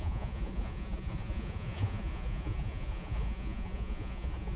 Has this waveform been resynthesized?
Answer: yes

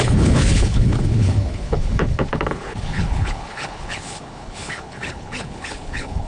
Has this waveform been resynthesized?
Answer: yes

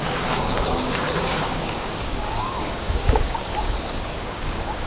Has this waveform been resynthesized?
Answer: yes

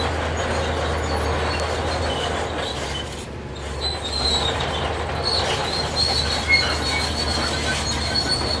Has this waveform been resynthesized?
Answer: no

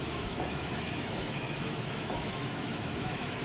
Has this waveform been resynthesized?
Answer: yes